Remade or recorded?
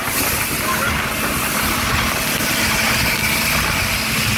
recorded